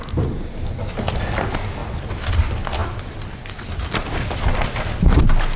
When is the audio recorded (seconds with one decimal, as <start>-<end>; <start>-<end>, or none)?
0.0-2.8; 4.4-5.6